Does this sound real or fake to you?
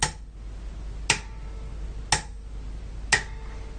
real